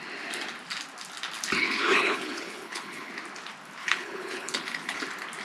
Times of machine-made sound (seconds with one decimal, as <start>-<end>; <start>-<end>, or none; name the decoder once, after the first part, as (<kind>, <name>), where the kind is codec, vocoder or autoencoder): 1.6-3.1 (codec, HILCodec); 3.8-5.0